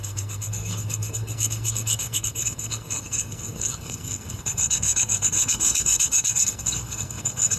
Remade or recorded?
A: remade